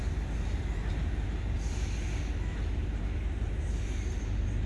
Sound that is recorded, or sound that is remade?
recorded